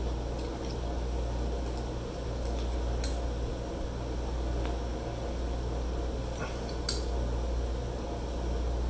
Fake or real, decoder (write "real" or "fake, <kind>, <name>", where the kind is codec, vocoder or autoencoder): real